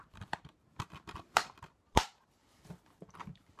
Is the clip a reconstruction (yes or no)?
yes